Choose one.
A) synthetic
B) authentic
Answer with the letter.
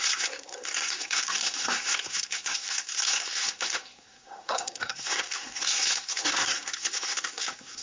A